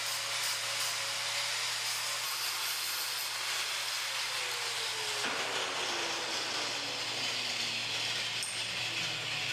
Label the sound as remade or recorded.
recorded